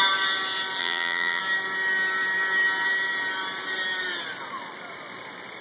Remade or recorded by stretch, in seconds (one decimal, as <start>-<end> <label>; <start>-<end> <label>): 0.0-0.8 recorded; 0.8-1.4 remade; 1.4-5.6 recorded